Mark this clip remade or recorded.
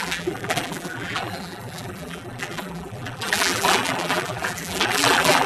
remade